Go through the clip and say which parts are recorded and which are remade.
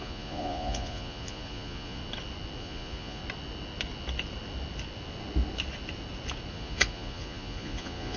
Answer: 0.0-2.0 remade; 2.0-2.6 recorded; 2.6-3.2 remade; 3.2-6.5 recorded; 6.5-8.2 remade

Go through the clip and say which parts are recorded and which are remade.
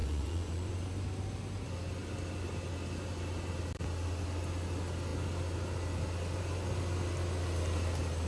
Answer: 0.0-0.7 remade; 0.7-8.3 recorded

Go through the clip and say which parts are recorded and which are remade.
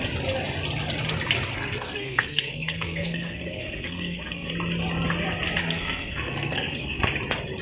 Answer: 0.0-1.5 recorded; 1.5-4.5 remade; 4.5-5.6 recorded; 5.6-7.0 remade; 7.0-7.6 recorded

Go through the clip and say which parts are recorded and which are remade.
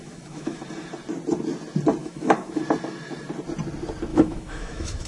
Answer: 0.0-0.6 remade; 0.6-2.0 recorded; 2.0-2.6 remade; 2.6-4.1 recorded; 4.1-5.1 remade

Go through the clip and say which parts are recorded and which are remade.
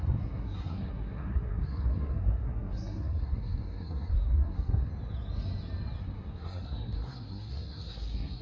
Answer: 0.0-4.9 remade; 4.9-6.0 recorded; 6.0-8.4 remade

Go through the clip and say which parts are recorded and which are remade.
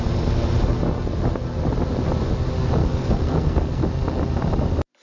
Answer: 0.0-2.8 recorded; 2.8-3.8 remade; 3.8-5.0 recorded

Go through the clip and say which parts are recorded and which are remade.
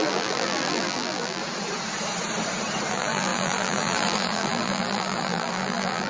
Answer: 0.0-1.4 remade; 1.4-2.9 recorded; 2.9-6.1 remade